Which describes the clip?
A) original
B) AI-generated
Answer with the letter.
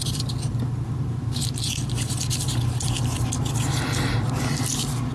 A